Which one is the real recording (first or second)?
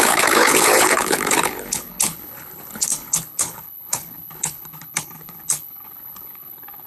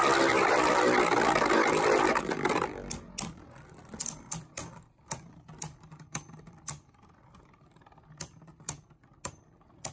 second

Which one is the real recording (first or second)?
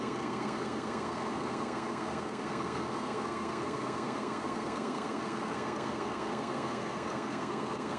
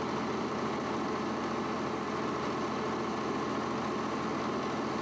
second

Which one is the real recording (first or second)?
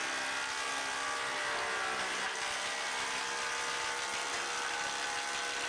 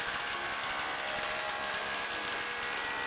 first